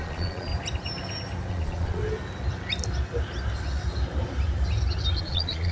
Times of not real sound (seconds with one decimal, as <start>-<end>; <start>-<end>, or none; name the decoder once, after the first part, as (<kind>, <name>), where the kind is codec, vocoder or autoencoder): 0.0-0.5 (vocoder, Vocos); 1.5-2.0; 5.2-5.7